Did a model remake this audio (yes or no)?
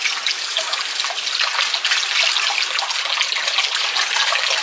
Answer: no